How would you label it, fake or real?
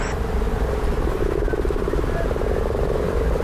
fake